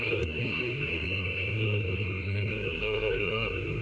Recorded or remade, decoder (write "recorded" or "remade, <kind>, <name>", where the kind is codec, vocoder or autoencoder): remade, codec, SNAC